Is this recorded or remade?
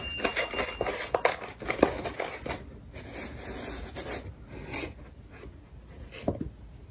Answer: recorded